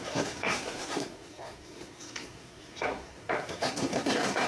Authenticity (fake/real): fake